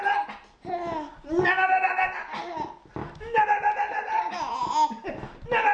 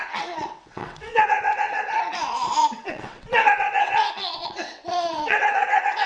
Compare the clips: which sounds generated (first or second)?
second